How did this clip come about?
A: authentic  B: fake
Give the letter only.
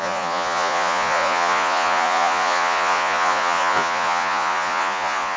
B